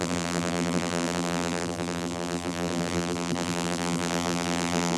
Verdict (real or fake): fake